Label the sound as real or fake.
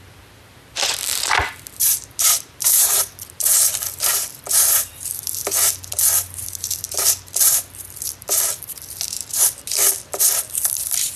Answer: fake